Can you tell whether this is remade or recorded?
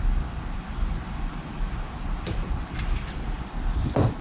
remade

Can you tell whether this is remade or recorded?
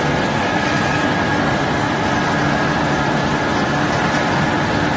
recorded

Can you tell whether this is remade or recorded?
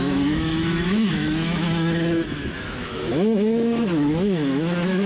remade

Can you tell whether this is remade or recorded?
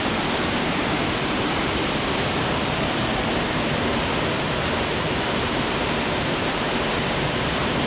remade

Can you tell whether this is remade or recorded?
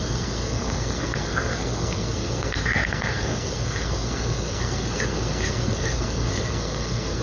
remade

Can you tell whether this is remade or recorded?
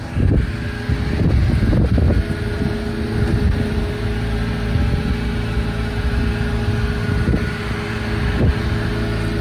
recorded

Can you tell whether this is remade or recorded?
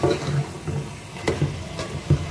recorded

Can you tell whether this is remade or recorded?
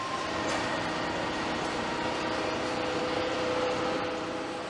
recorded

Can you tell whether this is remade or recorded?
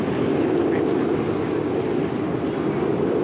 recorded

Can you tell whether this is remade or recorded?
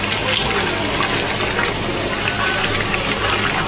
recorded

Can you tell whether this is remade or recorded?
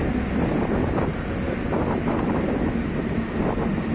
recorded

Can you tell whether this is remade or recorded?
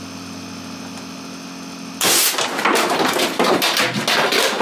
recorded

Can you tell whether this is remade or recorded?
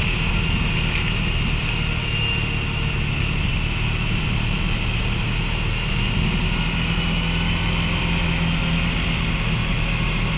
recorded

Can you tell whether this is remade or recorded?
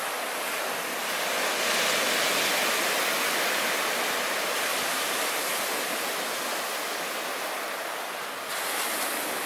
recorded